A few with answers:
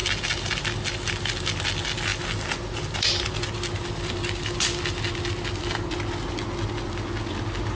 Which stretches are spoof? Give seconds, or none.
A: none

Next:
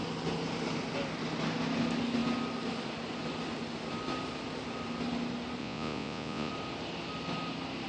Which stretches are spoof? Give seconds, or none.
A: 5.6-6.5 (vocoder, Vocos)

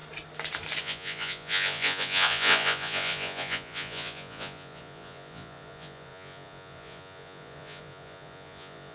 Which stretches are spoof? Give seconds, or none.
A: 0.8-8.9 (vocoder, Vocos)

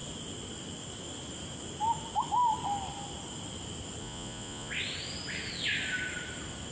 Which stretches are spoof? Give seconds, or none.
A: 4.0-4.7 (vocoder, Vocos)

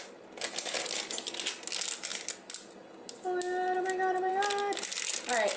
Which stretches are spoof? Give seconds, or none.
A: none

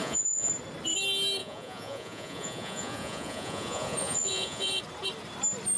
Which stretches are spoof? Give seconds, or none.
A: 0.0-0.5 (vocoder, Vocos); 1.4-4.8